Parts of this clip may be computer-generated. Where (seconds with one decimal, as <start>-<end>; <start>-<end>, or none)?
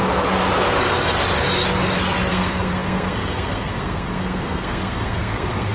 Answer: 2.3-5.7